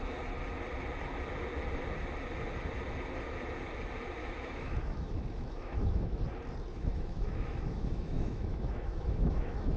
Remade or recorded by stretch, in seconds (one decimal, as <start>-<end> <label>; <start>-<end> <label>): 0.0-4.2 recorded; 4.2-6.2 remade; 6.2-6.7 recorded; 6.7-9.8 remade